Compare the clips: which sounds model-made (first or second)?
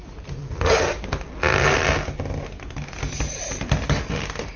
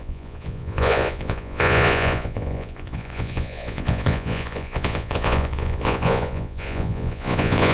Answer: second